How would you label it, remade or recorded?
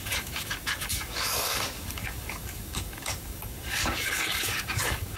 remade